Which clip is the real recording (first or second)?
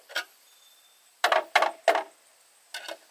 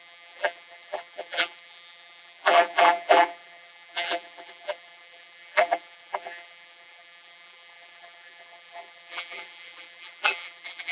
first